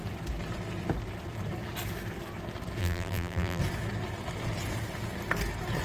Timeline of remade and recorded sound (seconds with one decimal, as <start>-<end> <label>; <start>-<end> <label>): 0.0-2.8 recorded; 2.8-3.6 remade; 3.6-5.8 recorded